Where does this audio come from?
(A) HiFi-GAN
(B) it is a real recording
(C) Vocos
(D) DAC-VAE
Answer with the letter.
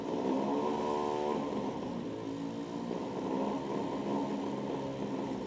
B